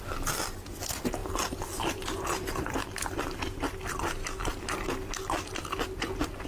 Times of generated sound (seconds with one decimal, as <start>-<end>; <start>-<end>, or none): none

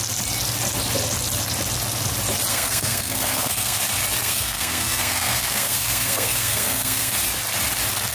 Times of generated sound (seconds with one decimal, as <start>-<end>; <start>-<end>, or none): 2.5-3.8; 4.2-7.1

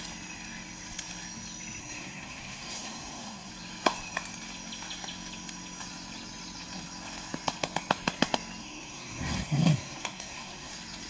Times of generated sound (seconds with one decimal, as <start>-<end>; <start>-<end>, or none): 1.8-3.5; 8.6-10.7

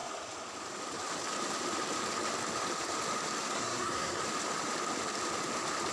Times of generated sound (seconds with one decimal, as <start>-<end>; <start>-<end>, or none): 3.4-4.2

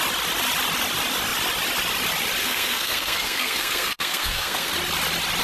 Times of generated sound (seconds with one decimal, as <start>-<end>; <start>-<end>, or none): 2.4-4.7

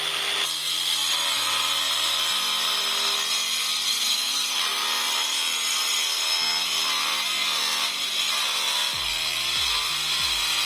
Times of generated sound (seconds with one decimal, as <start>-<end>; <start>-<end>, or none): 3.9-4.6